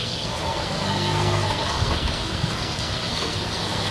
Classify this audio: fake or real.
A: fake